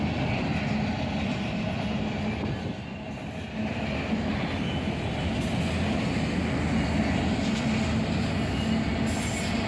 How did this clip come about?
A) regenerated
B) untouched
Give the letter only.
B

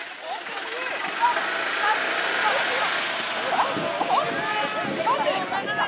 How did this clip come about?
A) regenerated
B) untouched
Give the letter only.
B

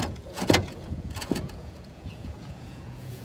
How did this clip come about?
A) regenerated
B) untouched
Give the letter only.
A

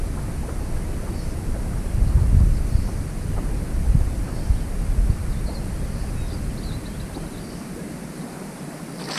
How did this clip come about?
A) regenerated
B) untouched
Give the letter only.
B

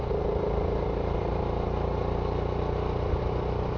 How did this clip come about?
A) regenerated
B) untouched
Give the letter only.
B